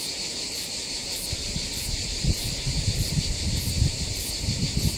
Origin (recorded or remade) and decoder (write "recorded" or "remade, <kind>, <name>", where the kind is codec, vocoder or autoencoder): remade, vocoder, BigVGAN v2